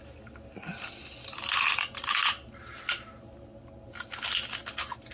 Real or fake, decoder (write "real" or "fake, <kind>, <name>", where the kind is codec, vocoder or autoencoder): real